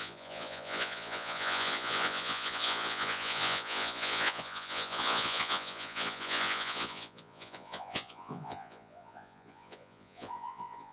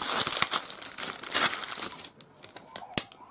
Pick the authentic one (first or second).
second